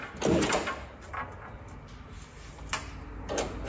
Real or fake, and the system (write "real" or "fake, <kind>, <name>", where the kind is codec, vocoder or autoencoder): real